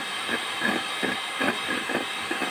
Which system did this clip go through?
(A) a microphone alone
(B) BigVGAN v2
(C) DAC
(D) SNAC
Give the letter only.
A